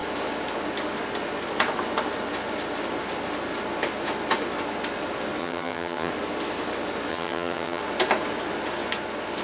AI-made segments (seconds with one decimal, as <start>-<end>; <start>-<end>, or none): 5.4-6.1; 7.1-7.8